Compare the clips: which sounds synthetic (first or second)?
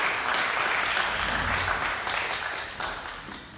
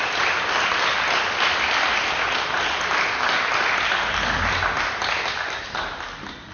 first